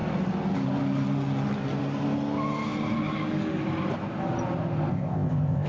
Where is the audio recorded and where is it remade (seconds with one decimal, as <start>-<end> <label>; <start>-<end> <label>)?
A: 0.0-4.9 recorded; 4.9-5.7 remade